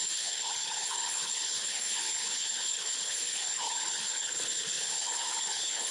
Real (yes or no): no